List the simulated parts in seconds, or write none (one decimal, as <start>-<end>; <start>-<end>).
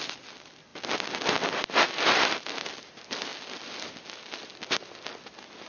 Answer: none